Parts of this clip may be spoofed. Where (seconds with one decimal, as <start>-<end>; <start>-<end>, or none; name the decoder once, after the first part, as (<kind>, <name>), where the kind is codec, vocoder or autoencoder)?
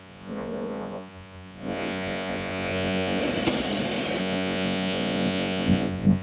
0.0-3.2 (vocoder, Vocos); 4.2-6.2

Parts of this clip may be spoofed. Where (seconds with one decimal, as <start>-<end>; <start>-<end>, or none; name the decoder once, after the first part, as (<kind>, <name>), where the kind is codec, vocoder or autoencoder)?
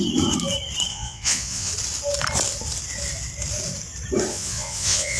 0.9-1.7 (vocoder, Vocos); 4.3-5.2